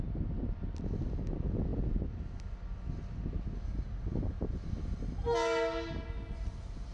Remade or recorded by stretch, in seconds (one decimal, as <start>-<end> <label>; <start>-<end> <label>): 0.0-6.9 recorded